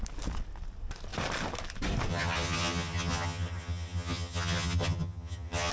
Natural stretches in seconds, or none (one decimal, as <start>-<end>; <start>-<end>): 0.0-2.1